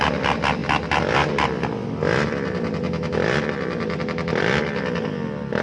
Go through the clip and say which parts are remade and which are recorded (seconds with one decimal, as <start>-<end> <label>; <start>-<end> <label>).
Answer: 0.0-5.6 recorded